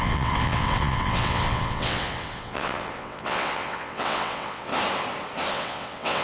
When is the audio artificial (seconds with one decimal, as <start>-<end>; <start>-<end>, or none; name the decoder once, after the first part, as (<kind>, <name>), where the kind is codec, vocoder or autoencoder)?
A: 0.0-4.7 (vocoder, WaveNeXt); 5.5-6.2